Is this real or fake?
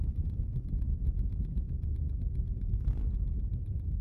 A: real